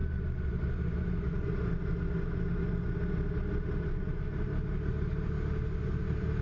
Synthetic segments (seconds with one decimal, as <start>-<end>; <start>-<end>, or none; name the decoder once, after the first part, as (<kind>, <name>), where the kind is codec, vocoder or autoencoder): none